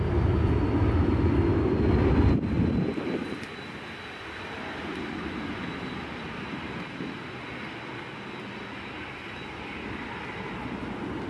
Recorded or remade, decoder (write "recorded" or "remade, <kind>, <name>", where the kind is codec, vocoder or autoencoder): recorded